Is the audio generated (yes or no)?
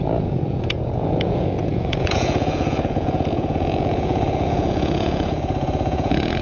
yes